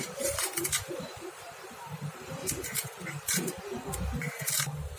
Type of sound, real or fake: fake